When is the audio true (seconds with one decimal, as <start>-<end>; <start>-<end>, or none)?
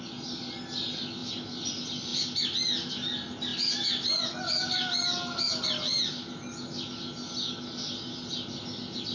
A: 0.0-9.1